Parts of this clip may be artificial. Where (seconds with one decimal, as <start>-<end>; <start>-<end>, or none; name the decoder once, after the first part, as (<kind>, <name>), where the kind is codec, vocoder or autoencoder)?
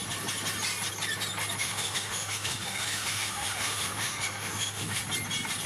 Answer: 1.6-5.0 (autoencoder, DAC-VAE)